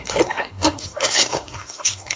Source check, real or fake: fake